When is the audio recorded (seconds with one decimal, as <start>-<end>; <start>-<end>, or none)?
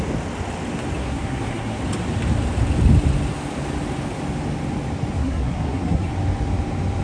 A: 0.0-1.0; 1.8-5.2; 6.1-7.0